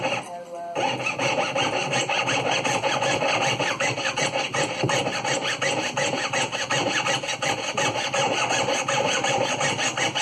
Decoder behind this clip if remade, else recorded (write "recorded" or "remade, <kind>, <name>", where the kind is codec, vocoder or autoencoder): recorded